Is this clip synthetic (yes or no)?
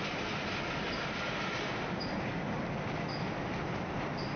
no